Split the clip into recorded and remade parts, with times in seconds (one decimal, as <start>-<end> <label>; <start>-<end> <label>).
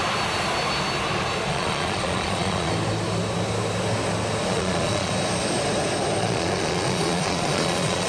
0.0-1.5 recorded; 1.5-2.7 remade; 2.7-4.5 recorded; 4.5-5.1 remade; 5.1-6.2 recorded; 6.2-8.1 remade